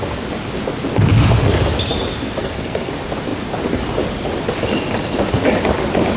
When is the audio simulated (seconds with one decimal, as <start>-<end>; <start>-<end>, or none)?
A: 2.4-2.9